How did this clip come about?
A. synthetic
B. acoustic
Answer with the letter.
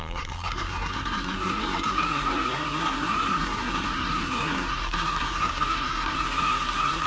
A